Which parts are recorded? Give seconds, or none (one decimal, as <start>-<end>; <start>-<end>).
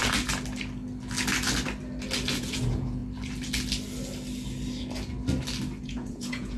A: 0.0-2.4; 3.0-5.8